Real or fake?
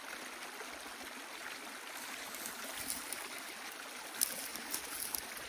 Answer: real